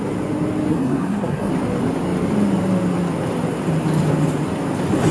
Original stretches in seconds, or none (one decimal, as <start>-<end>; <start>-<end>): 0.0-0.7; 1.5-5.1